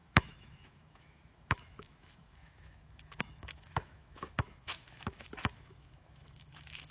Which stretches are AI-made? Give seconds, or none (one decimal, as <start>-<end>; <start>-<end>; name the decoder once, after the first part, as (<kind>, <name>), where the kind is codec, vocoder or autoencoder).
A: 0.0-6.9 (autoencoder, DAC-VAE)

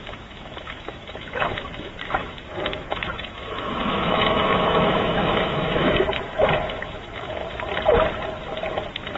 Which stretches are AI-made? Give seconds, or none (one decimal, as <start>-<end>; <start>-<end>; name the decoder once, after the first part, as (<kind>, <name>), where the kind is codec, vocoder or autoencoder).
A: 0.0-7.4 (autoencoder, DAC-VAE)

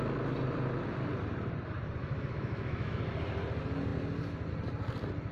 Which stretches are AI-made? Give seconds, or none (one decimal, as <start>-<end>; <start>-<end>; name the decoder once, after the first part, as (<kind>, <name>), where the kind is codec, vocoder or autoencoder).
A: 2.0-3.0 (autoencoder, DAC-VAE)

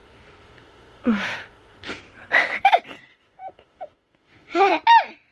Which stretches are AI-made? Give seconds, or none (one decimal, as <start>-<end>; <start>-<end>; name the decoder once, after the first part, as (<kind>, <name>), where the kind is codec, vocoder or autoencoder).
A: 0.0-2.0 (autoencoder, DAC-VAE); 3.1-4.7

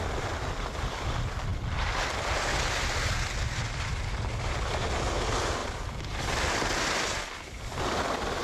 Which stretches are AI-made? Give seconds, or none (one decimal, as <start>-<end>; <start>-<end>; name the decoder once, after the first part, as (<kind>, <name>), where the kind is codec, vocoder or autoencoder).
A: none

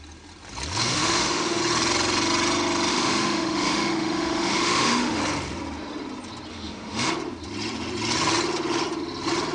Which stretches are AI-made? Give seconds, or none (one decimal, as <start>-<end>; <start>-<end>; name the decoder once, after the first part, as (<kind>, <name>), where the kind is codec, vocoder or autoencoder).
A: 0.8-1.6 (autoencoder, DAC-VAE); 2.9-5.2; 6.5-7.1

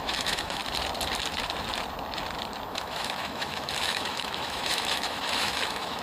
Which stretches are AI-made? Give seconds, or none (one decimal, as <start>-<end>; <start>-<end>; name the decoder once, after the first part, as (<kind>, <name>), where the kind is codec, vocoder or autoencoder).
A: 0.0-0.6 (autoencoder, DAC-VAE); 2.7-6.0

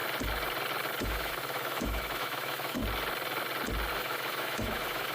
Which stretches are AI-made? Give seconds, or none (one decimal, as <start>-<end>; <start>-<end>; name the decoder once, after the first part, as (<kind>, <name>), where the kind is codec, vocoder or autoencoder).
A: 1.0-2.8 (autoencoder, DAC-VAE); 3.9-5.1